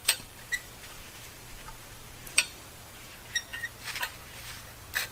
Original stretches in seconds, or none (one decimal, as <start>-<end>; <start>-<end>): 3.1-5.1